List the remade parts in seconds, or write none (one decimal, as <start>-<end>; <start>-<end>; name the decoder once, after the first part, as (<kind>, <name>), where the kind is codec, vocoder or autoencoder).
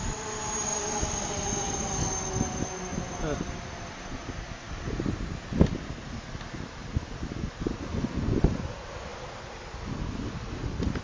0.7-1.9 (vocoder, BigVGAN v2)